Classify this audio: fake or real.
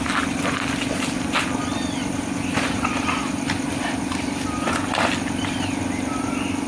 real